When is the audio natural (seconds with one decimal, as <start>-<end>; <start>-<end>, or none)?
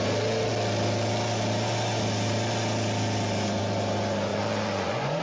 0.0-4.3